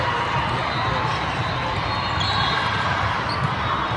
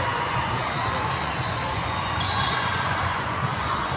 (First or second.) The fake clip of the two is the second